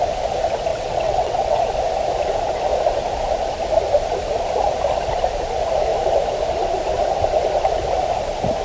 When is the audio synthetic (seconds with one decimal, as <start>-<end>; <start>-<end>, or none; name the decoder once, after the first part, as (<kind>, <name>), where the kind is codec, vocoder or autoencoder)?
0.7-1.6 (vocoder, WaveNeXt)